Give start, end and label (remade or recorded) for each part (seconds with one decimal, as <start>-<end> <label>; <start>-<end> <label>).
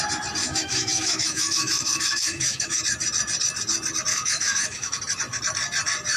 0.0-0.4 recorded; 0.4-2.8 remade; 2.8-4.1 recorded; 4.1-5.0 remade; 5.0-6.2 recorded